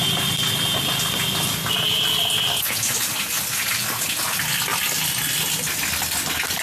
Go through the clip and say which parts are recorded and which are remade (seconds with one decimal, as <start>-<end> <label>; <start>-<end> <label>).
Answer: 0.0-6.6 recorded